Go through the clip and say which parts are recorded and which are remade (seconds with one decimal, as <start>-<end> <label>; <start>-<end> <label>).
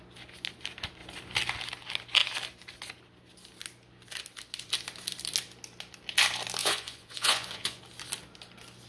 0.0-6.6 recorded; 6.6-7.8 remade; 7.8-8.9 recorded